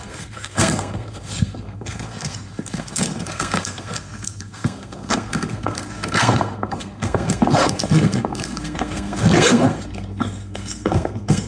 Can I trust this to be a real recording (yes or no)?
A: no